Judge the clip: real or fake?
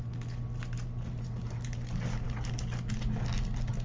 real